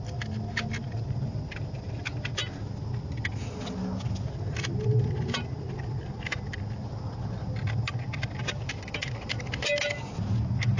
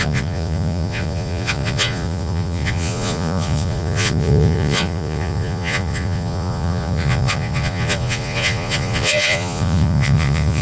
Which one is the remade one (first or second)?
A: second